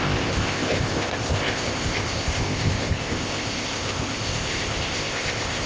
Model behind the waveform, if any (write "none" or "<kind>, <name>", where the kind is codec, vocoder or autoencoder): codec, ZipCodec